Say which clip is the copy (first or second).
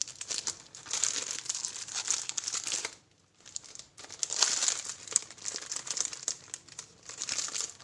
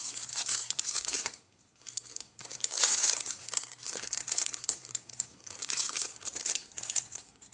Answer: second